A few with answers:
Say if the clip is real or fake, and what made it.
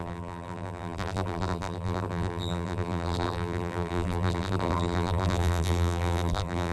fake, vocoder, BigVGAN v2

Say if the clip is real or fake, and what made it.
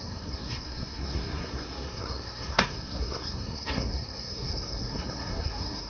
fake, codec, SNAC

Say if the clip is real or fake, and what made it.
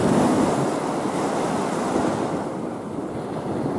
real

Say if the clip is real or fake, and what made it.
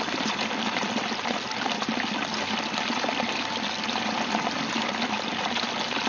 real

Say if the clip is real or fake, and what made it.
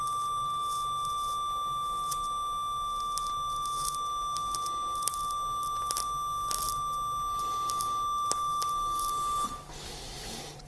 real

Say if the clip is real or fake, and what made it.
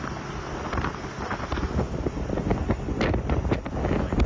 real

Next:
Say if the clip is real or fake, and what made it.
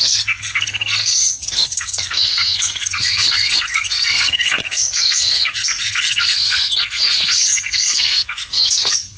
fake, codec, SNAC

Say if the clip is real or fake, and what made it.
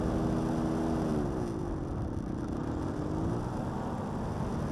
real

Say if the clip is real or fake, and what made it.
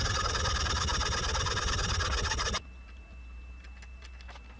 real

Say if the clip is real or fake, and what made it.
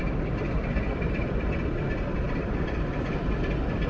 real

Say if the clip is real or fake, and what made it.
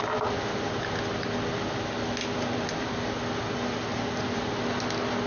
real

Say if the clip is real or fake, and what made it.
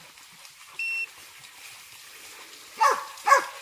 real